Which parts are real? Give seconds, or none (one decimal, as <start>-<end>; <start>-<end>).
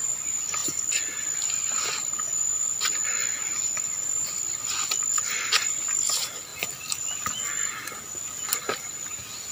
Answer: 0.0-9.5